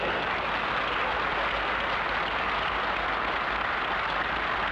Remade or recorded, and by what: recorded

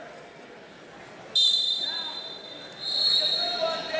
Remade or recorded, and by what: recorded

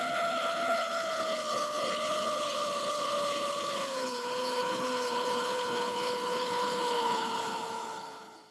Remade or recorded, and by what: remade, codec, HILCodec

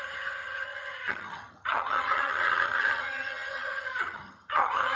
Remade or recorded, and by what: remade, vocoder, HiFi-GAN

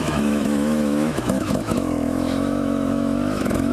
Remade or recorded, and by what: remade, autoencoder, DAC-VAE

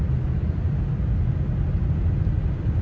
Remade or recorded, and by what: recorded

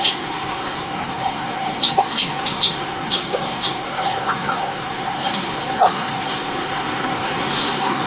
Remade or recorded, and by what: remade, codec, SNAC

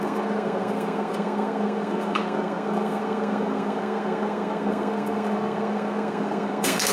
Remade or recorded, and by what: remade, codec, SNAC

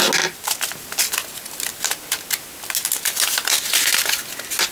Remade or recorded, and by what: recorded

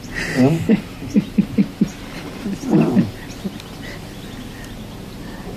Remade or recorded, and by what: recorded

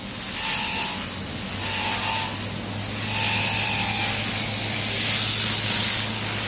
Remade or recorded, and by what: recorded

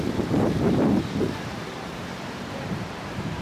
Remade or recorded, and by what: remade, vocoder, BigVGAN v2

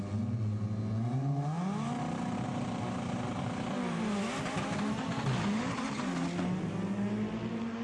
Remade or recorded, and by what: recorded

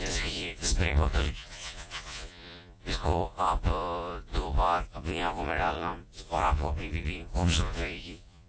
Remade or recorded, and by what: remade, vocoder, Vocos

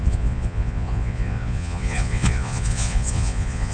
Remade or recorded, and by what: remade, vocoder, Vocos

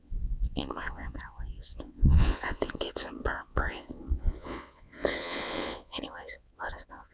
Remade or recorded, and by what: remade, vocoder, Vocos